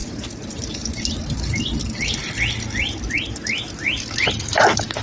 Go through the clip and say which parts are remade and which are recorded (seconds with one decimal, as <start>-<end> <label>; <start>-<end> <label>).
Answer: 0.0-5.0 recorded